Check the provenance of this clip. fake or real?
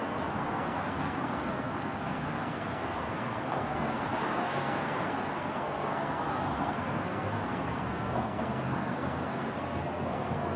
fake